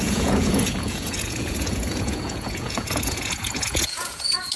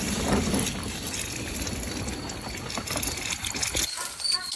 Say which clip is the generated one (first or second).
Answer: first